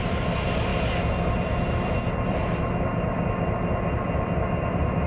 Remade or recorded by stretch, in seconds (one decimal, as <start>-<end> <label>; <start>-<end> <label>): 0.0-0.7 remade; 0.7-1.3 recorded; 1.3-2.4 remade; 2.4-4.6 recorded; 4.6-5.1 remade